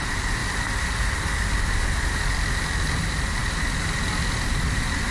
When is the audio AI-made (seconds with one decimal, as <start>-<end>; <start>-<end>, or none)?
0.0-0.4; 3.0-3.4; 4.5-5.1